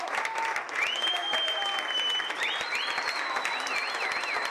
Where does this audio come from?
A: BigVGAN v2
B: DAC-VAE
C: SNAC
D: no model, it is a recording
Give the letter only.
D